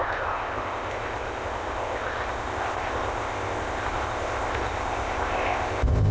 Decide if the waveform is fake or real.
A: fake